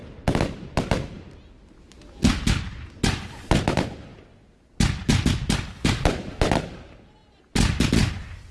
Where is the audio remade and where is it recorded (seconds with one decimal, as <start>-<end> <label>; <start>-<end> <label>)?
0.0-8.5 recorded